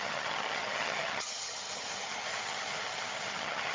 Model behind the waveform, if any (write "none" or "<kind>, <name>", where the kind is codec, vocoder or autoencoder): vocoder, HiFi-GAN